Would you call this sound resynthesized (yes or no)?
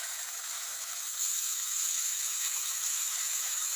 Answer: yes